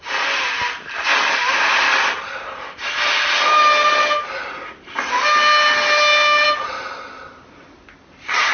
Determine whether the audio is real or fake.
real